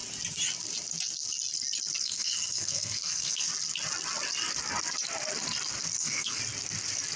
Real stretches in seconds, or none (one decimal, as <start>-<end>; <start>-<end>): 0.0-2.0; 3.5-6.0; 6.4-7.2